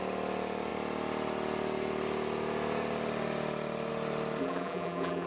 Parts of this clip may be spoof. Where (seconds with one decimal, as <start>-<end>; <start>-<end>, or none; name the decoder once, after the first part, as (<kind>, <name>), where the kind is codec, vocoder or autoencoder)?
4.4-5.3 (vocoder, BigVGAN v2)